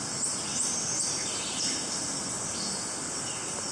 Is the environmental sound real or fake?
real